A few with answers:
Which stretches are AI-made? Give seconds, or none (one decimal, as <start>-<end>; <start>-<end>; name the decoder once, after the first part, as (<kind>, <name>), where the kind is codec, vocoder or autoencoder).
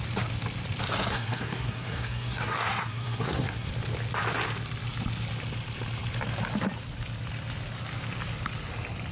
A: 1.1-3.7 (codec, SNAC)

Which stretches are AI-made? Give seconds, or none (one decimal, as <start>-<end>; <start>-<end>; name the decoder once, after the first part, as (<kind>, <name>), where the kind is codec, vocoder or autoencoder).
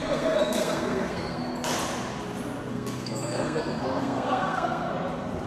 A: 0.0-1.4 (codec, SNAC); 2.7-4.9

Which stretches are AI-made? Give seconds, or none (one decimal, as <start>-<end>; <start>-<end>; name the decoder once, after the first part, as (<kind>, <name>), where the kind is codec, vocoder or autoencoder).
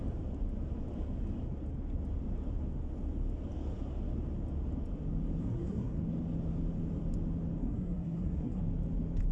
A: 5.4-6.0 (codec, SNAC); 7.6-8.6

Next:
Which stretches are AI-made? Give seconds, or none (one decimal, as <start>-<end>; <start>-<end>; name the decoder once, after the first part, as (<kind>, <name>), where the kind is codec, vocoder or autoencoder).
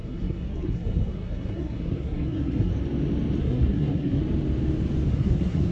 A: 0.0-2.7 (codec, SNAC); 3.4-4.2; 5.1-5.7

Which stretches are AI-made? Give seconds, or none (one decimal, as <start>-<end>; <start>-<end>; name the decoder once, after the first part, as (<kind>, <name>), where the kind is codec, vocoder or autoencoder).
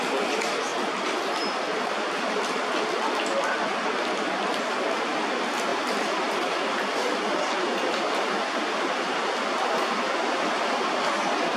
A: none